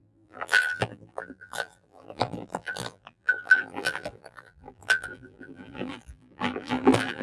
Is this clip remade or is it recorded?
remade